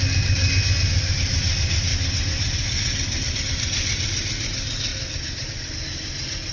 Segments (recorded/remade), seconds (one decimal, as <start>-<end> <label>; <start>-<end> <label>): 0.0-6.5 recorded